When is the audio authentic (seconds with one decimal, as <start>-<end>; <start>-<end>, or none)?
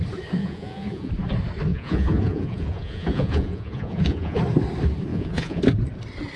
0.0-0.4; 1.1-1.7; 4.4-5.1; 5.6-6.4